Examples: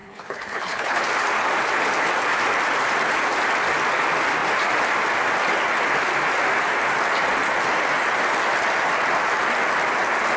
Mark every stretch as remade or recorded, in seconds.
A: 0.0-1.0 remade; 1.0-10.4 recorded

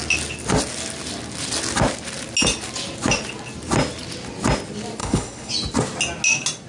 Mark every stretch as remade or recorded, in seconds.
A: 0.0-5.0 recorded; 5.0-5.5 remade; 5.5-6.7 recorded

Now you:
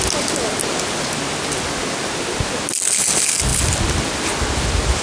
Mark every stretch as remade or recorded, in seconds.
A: 0.0-5.0 recorded

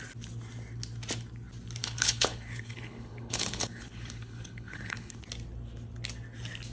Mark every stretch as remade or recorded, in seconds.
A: 0.0-1.8 recorded; 1.8-5.2 remade; 5.2-6.7 recorded

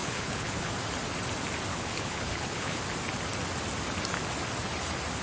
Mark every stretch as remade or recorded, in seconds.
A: 0.0-0.7 remade; 0.7-1.7 recorded; 1.7-2.8 remade; 2.8-5.2 recorded

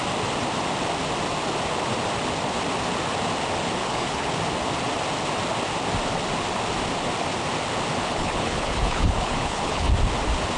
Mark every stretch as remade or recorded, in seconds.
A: 0.0-3.8 recorded; 3.8-4.3 remade; 4.3-8.0 recorded; 8.0-9.9 remade; 9.9-10.6 recorded